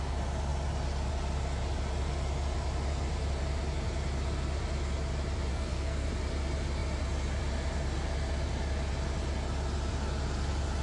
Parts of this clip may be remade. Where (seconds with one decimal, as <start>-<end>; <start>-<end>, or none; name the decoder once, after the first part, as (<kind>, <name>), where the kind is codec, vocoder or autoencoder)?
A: 5.5-6.1 (codec, SNAC)

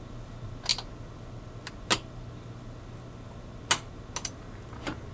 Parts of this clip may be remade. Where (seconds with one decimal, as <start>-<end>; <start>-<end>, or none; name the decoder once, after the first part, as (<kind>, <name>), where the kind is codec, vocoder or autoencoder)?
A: none

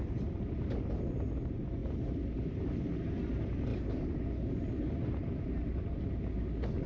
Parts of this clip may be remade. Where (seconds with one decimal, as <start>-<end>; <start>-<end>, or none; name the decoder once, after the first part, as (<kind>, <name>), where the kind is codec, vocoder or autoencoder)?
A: none